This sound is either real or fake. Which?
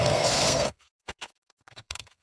fake